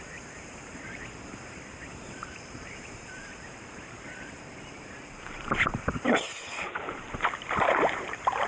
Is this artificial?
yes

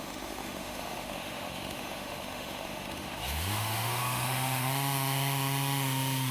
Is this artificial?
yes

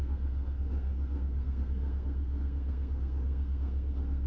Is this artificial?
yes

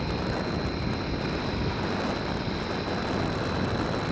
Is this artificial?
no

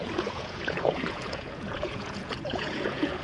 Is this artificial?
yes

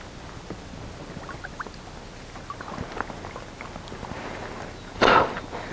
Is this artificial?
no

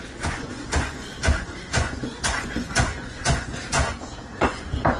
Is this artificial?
yes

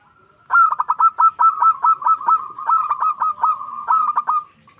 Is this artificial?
no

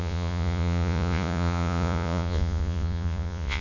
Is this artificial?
yes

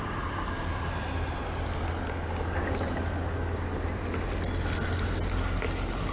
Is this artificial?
no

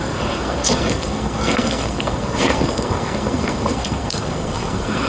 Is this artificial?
yes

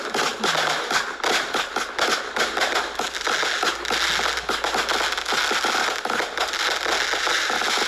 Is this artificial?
no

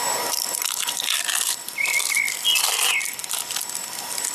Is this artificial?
yes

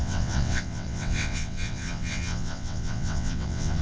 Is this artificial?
yes